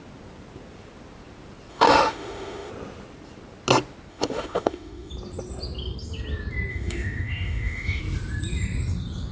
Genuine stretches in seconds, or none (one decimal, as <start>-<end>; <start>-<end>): 0.0-1.7; 2.7-4.1; 5.1-6.7; 8.0-9.3